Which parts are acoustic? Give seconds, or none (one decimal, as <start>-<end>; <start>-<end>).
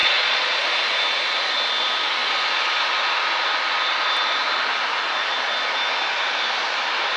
0.6-7.2